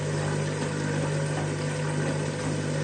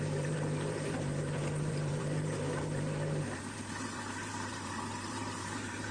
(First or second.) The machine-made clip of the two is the second